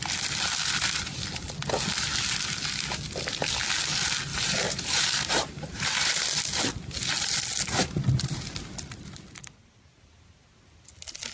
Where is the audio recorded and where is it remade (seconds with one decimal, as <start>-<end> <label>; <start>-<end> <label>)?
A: 0.0-4.3 recorded; 4.3-6.2 remade; 6.2-11.3 recorded